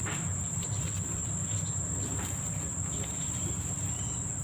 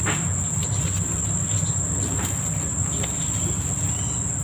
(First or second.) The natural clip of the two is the second